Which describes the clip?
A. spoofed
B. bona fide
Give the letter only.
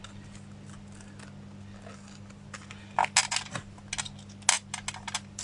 B